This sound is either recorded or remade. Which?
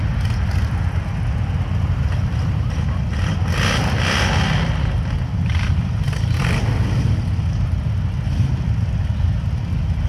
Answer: recorded